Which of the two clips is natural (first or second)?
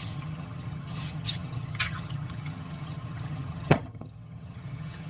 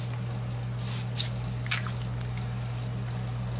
second